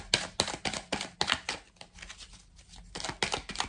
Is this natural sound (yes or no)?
yes